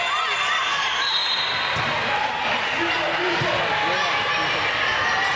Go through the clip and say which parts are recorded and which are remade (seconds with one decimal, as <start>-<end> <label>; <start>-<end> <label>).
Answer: 0.0-5.4 recorded